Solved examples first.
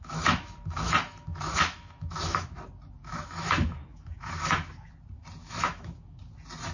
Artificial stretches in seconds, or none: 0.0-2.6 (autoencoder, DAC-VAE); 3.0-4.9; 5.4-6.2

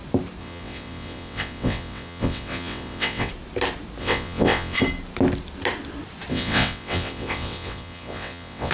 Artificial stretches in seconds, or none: 0.4-3.3 (vocoder, WaveNeXt); 4.0-4.8; 6.3-8.7

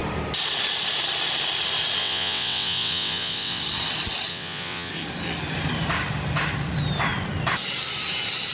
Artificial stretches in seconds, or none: 2.0-3.6 (vocoder, WaveNeXt); 4.3-4.9

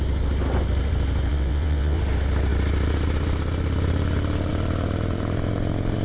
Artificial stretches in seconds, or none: 1.3-2.0 (vocoder, WaveNeXt)

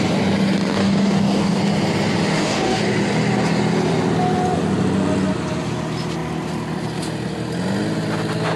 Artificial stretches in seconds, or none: 0.7-1.6 (codec, DAC); 2.3-2.8

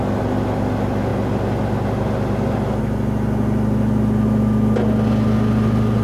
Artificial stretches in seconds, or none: none